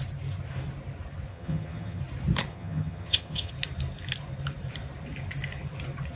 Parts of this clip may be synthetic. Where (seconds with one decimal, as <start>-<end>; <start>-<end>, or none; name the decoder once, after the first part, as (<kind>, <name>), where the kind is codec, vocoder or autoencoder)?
1.3-2.0 (vocoder, HiFi-GAN); 2.5-3.5